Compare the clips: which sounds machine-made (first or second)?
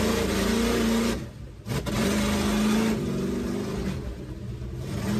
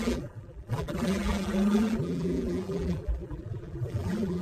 second